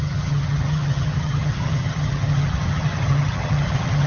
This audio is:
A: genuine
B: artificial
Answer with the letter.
B